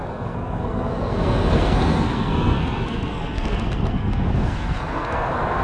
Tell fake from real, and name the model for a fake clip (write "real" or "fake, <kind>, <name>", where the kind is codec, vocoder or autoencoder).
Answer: fake, codec, SNAC